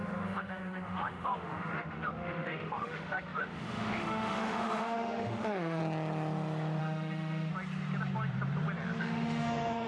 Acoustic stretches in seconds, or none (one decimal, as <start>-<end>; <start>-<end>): 5.8-6.8; 7.5-9.0